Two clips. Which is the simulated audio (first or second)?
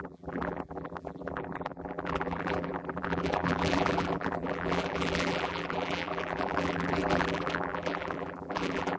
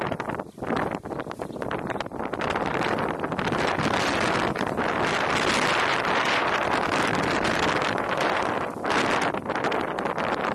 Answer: first